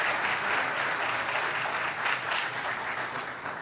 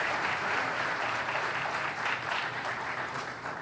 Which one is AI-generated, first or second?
second